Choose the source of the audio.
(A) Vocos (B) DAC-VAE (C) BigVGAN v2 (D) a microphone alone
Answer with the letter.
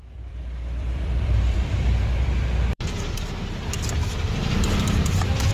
C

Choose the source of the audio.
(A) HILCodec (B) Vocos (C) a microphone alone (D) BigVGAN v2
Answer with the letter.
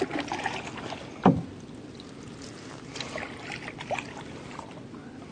C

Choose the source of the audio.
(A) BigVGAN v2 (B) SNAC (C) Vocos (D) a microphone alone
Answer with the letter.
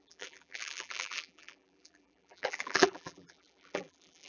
A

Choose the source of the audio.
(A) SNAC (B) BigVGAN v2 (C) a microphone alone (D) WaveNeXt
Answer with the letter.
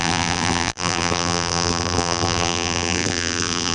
B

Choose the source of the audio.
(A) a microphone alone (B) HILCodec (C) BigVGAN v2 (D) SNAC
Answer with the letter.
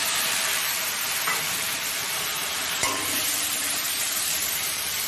C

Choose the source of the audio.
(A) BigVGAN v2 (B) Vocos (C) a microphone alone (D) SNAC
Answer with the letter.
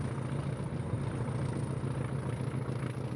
C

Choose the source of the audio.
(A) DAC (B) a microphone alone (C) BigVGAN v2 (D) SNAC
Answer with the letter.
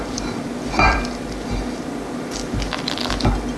C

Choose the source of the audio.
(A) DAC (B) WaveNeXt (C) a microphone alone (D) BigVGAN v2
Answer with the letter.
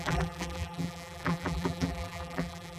D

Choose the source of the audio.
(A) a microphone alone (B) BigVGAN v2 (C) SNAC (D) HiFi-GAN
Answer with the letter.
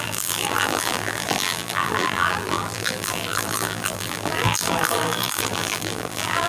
B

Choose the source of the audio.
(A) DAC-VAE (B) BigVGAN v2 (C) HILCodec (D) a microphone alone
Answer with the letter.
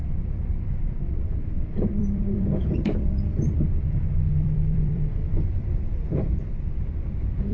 B